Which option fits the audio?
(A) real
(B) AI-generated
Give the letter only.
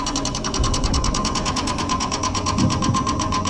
B